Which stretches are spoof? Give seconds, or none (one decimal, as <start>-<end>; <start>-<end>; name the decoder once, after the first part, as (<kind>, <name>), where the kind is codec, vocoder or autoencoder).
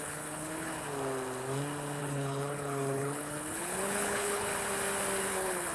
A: 0.0-0.7 (codec, HILCodec); 2.0-4.5; 5.3-5.7